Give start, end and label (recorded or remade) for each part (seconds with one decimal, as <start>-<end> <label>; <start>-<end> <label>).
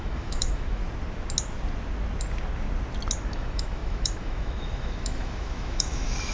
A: 0.0-0.8 remade; 0.8-3.3 recorded; 3.3-6.3 remade